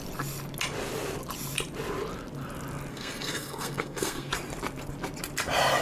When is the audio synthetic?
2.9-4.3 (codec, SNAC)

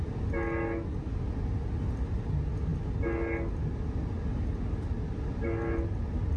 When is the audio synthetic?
none

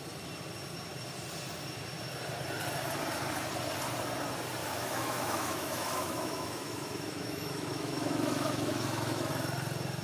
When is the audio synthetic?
4.6-9.3 (autoencoder, DAC-VAE)

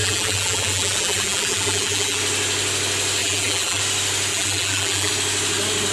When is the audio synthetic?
0.0-2.2 (vocoder, BigVGAN v2); 3.2-3.8; 4.3-5.1

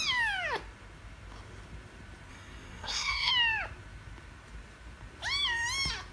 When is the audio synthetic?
2.3-3.3 (codec, SNAC)

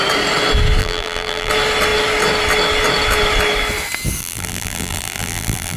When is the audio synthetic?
0.8-1.5 (vocoder, BigVGAN v2); 4.2-5.8

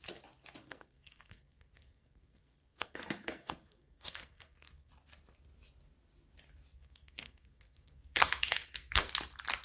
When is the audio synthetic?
0.6-4.9 (codec, SNAC); 6.7-9.1